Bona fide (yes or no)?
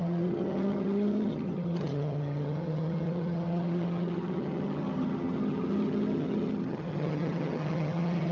no